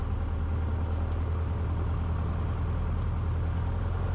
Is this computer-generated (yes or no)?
no